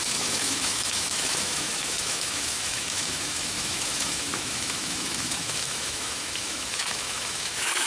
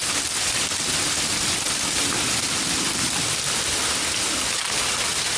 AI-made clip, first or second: first